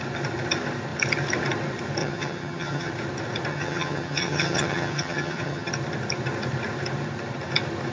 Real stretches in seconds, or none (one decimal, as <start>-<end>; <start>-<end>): 0.0-2.0; 2.9-3.5; 5.7-7.9